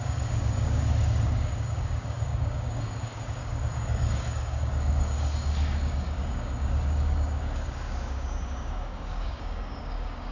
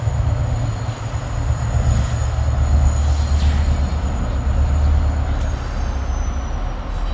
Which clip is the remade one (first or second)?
first